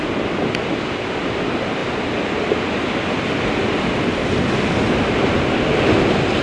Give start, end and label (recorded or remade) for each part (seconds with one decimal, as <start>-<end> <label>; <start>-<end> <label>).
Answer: 0.0-6.4 recorded